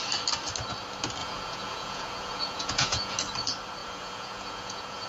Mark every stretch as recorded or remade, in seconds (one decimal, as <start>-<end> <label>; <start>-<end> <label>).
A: 0.0-1.2 recorded; 1.2-3.2 remade; 3.2-3.8 recorded; 3.8-5.1 remade

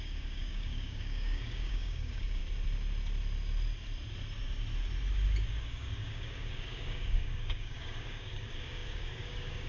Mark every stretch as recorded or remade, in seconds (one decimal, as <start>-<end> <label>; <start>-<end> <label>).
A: 0.0-2.4 remade; 2.4-5.4 recorded; 5.4-9.7 remade

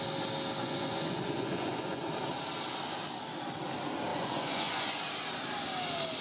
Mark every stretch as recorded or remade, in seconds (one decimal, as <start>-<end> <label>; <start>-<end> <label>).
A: 0.0-0.6 recorded; 0.6-2.1 remade; 2.1-4.1 recorded; 4.1-5.0 remade; 5.0-6.2 recorded

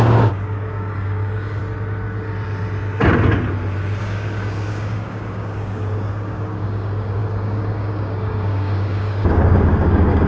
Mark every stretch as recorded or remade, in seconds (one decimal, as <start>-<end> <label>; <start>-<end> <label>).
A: 0.0-1.6 remade; 1.6-4.0 recorded; 4.0-10.3 remade